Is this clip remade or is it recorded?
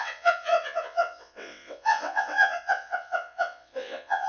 remade